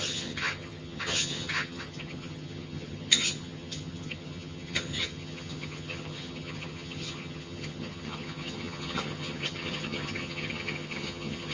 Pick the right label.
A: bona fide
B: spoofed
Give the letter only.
B